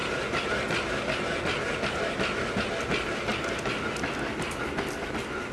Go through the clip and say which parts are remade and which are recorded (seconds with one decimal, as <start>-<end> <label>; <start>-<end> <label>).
0.0-5.5 recorded